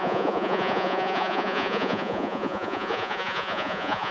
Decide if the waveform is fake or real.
fake